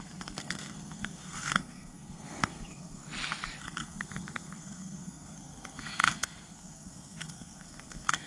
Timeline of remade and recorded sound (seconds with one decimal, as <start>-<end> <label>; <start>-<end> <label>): 0.0-3.0 remade; 3.0-3.6 recorded; 3.6-8.3 remade